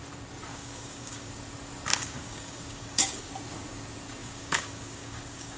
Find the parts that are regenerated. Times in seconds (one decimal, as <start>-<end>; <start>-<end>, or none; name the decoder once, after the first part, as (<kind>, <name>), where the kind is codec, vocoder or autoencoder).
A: 0.5-1.3 (codec, DAC); 1.9-3.3; 4.2-5.6